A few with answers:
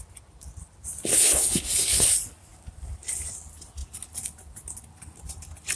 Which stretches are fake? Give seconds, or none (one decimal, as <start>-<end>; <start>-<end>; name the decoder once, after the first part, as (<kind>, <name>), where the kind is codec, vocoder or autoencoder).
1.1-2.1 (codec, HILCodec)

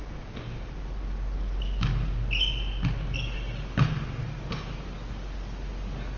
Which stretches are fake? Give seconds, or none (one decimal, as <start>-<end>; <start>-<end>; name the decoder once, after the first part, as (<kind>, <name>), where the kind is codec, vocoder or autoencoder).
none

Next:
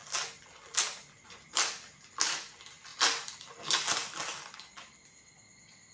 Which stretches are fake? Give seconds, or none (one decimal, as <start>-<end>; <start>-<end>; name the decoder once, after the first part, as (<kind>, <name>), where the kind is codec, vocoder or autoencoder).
2.9-3.5 (vocoder, BigVGAN v2)

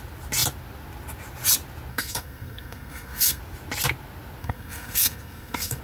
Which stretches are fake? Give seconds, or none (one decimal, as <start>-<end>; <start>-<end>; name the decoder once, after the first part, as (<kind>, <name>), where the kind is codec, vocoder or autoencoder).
1.9-3.4 (codec, SNAC); 4.4-5.8